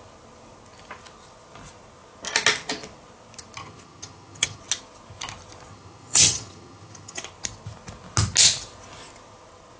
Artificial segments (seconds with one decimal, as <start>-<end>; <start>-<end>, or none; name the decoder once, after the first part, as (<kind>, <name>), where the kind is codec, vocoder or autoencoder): 3.6-4.6 (vocoder, HiFi-GAN); 5.7-7.2